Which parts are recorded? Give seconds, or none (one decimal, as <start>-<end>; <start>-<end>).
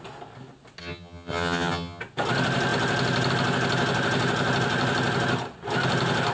0.0-0.8; 2.0-6.3